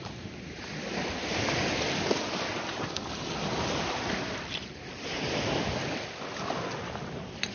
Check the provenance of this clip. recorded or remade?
recorded